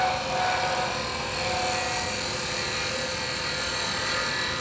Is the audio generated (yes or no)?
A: no